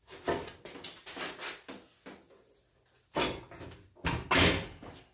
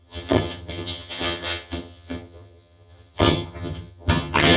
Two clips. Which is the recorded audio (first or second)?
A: first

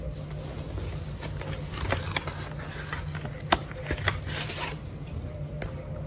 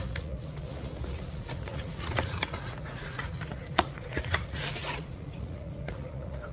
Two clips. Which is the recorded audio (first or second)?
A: first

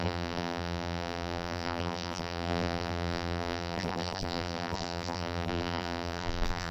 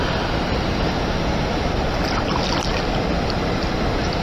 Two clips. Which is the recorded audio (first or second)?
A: second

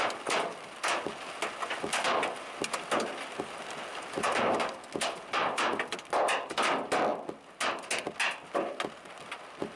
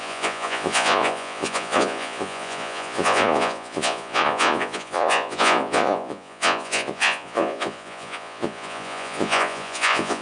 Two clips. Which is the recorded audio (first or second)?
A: first